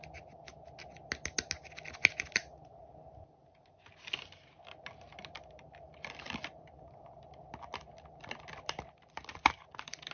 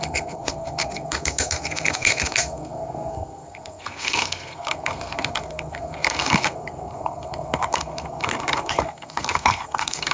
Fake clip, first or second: second